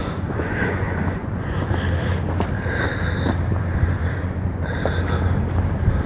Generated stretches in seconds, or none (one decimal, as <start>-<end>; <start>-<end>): 0.0-1.7; 4.0-4.6